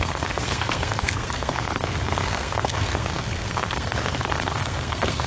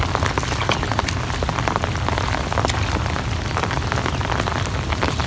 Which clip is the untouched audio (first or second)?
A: second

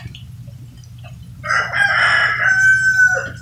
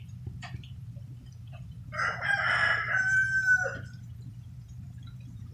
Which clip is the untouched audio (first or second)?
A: first